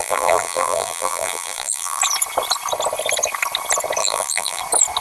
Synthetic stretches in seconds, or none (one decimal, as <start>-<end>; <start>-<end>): 0.0-2.0; 4.0-4.6